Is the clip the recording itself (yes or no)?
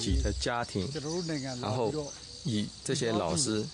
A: yes